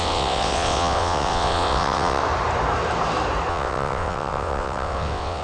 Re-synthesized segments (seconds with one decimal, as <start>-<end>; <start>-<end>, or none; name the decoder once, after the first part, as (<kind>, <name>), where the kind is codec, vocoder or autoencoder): 0.0-2.2 (vocoder, WaveNeXt); 3.5-5.4

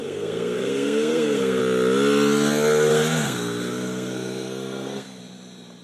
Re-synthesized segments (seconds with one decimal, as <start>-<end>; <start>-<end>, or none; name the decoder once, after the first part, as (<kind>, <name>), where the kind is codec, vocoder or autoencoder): 0.0-1.6 (codec, SNAC); 2.9-5.2

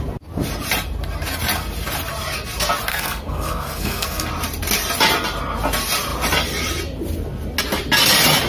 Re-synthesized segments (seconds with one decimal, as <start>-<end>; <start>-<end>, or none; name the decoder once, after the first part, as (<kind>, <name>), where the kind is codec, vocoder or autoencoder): 2.9-4.3 (codec, SNAC)

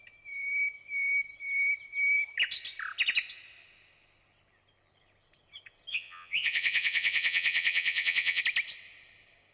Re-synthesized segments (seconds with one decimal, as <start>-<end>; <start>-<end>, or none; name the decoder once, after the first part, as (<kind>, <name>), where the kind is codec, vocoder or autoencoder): 5.9-8.4 (vocoder, Vocos)